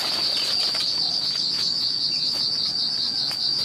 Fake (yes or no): no